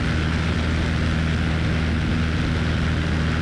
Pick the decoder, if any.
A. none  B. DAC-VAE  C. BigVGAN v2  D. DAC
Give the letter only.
A